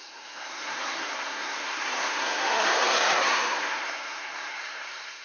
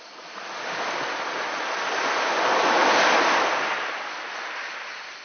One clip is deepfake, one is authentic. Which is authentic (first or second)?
second